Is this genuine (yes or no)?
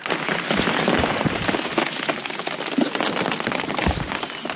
yes